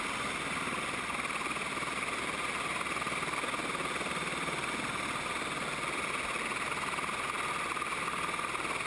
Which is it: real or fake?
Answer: real